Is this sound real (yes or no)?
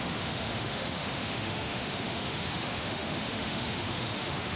no